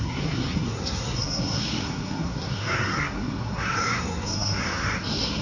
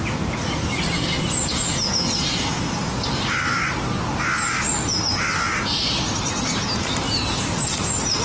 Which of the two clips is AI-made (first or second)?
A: first